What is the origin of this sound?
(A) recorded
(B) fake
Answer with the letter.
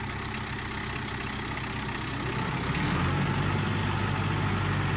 A